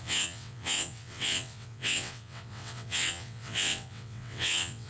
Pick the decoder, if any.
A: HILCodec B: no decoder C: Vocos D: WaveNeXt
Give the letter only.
D